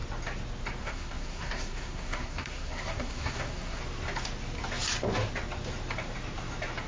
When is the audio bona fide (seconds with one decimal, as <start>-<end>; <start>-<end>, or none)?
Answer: 0.0-0.8; 3.8-6.9